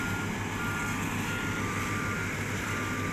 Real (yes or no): yes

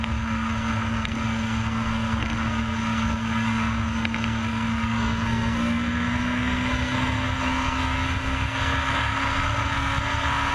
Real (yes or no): no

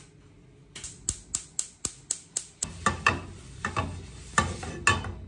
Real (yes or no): yes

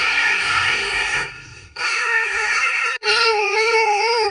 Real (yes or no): no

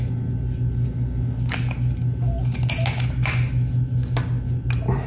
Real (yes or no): yes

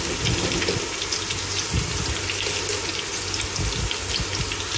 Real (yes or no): yes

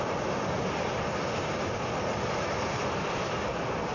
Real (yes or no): yes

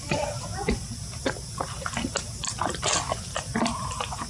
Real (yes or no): yes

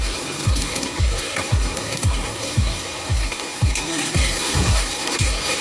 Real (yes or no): no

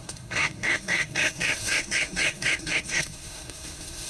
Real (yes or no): no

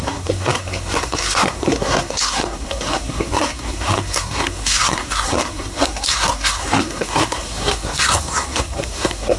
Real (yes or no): no